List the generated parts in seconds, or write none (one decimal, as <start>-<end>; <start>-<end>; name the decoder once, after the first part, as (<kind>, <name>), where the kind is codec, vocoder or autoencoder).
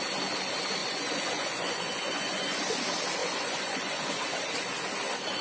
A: 0.8-2.8 (vocoder, Vocos); 3.2-4.2